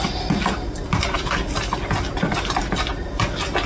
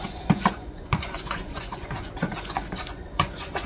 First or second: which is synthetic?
second